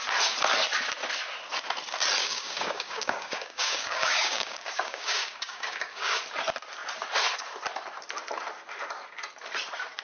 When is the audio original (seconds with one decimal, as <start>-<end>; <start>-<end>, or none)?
0.0-2.2; 6.2-10.0